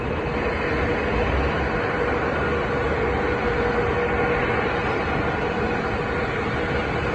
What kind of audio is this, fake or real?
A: real